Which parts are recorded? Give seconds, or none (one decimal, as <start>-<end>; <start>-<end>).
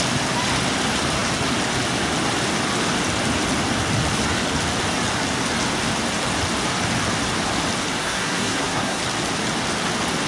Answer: 0.0-8.0; 9.0-10.3